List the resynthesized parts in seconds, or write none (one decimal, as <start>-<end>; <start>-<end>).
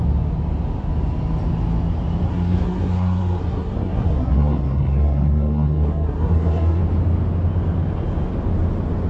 2.3-6.8